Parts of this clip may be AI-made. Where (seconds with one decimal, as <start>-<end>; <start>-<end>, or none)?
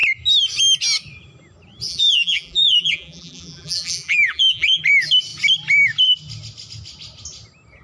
1.9-4.8